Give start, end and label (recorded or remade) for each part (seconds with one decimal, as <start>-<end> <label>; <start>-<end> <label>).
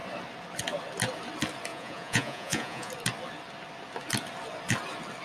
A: 0.0-1.7 recorded; 1.7-2.9 remade; 2.9-5.2 recorded